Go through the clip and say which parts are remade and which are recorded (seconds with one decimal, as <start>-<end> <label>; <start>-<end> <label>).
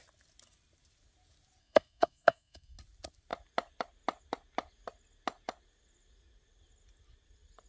0.0-1.6 recorded; 1.6-2.8 remade; 2.8-7.7 recorded